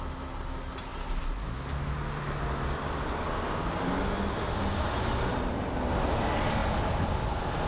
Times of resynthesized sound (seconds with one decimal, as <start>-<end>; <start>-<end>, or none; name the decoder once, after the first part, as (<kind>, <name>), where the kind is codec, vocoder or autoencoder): none

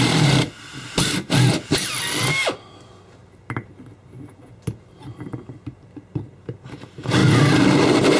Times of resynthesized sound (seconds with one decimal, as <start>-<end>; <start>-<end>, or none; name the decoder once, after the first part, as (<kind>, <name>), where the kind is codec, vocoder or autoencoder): none